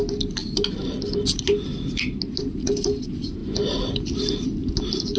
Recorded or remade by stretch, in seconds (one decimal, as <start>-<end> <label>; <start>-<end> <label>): 0.0-5.2 recorded